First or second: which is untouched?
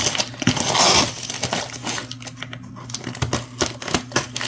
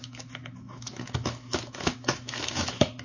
first